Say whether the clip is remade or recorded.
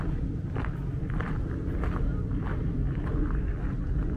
recorded